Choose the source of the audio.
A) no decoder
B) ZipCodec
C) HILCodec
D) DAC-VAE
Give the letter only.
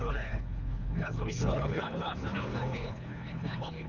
C